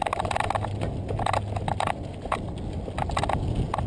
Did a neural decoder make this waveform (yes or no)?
no